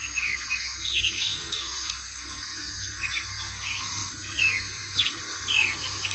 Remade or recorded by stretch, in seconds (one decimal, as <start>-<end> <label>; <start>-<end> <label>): 0.0-6.1 remade